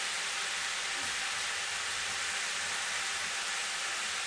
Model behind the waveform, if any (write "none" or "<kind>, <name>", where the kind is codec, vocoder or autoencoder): none